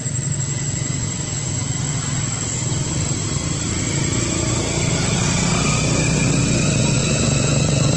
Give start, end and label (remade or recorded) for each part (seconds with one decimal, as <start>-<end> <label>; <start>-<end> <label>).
0.0-7.0 recorded; 7.0-8.0 remade